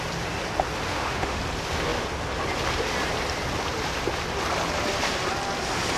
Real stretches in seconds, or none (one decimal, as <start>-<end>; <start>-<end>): 0.0-0.9; 1.4-6.0